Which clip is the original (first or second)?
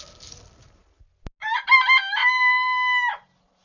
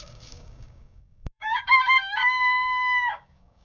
first